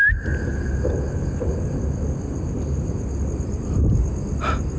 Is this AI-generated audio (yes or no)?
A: no